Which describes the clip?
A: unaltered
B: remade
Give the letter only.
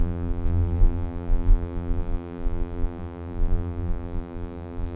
B